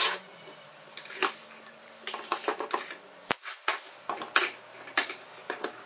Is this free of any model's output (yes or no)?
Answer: no